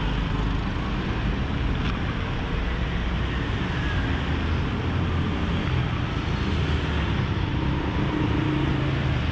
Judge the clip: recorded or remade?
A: recorded